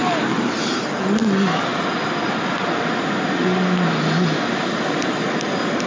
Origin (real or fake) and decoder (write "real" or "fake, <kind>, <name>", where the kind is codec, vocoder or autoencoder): real